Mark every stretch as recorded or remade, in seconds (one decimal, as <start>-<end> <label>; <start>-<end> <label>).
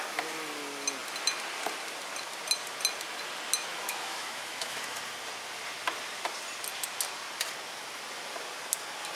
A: 0.0-3.7 recorded; 3.7-5.0 remade; 5.0-9.2 recorded